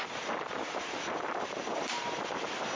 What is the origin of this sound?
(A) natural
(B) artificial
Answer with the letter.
B